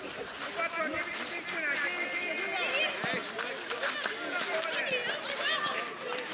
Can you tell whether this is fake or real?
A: real